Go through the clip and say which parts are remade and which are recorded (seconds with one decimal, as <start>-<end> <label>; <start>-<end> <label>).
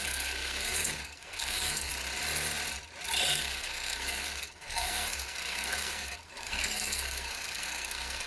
0.0-1.9 remade; 1.9-3.3 recorded; 3.3-8.3 remade